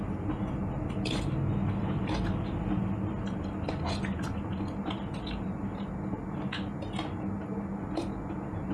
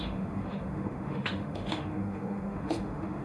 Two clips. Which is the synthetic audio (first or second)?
second